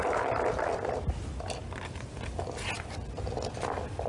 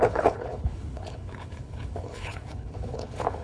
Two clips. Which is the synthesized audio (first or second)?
second